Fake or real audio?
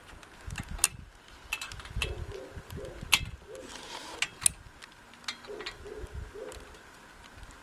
real